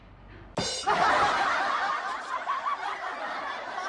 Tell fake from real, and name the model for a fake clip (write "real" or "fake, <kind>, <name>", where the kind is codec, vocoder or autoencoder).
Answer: real